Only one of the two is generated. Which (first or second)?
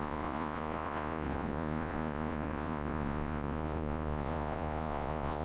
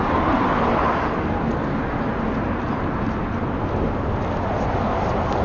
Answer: first